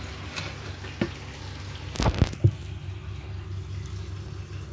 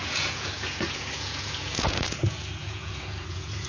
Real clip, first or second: first